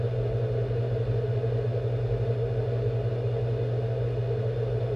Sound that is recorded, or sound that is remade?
recorded